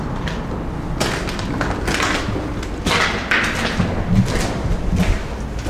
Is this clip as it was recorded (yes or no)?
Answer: yes